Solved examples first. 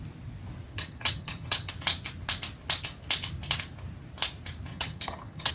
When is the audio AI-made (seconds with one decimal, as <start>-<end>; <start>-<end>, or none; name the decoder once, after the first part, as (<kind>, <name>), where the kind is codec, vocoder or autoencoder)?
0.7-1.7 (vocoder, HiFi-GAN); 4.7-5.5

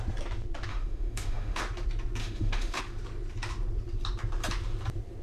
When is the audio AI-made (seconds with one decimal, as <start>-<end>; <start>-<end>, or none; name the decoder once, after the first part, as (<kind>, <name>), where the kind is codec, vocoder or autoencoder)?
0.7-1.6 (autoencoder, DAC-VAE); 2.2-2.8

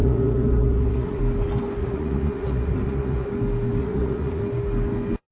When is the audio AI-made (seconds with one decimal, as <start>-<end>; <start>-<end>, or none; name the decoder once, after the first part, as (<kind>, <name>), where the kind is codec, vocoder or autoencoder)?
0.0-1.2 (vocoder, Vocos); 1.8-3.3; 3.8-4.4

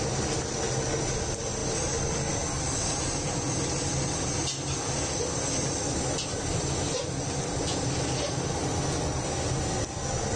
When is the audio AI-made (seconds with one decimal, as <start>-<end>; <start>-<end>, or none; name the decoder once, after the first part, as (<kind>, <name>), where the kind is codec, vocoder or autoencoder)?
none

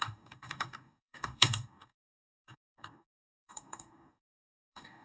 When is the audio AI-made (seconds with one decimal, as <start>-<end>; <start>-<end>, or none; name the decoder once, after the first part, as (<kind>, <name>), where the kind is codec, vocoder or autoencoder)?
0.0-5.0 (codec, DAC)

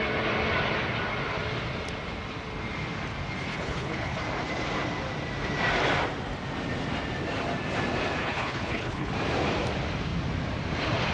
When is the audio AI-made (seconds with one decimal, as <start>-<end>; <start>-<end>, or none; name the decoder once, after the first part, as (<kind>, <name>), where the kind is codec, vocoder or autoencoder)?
3.5-4.2 (codec, HILCodec); 8.2-9.1

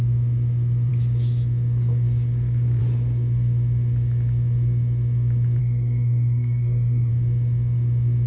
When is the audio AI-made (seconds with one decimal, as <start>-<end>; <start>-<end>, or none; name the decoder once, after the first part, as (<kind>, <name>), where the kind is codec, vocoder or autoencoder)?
5.6-7.1 (codec, SNAC)